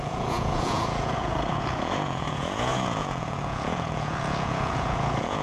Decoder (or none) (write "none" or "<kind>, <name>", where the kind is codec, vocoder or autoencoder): vocoder, Vocos